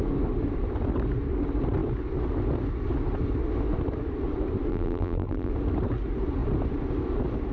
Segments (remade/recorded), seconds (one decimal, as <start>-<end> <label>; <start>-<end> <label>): 0.0-4.7 recorded; 4.7-5.5 remade; 5.5-7.5 recorded